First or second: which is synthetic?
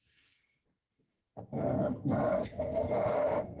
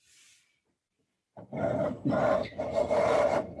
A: first